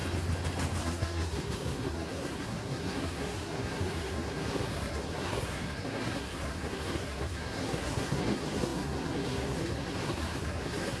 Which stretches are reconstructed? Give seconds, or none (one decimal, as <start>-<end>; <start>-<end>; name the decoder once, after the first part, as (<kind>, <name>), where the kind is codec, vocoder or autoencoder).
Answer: 0.8-11.0 (codec, SNAC)